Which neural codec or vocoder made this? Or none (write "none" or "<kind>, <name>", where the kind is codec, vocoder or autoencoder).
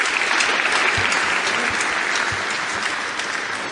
none